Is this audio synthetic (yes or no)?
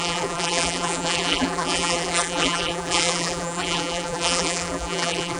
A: yes